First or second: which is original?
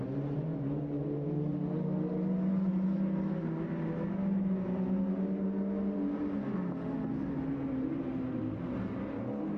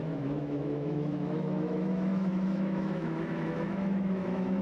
first